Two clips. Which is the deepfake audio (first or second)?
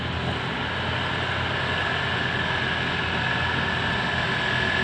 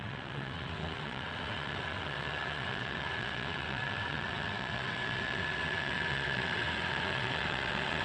second